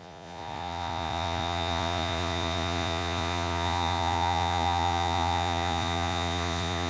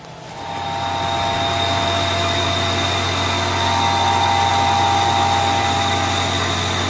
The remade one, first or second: first